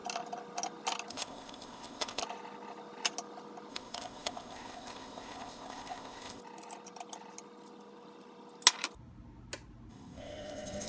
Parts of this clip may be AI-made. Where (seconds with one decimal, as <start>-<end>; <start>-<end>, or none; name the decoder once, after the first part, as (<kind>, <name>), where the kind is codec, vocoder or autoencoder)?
1.1-2.2 (codec, ZipCodec); 3.7-6.4; 9.9-10.9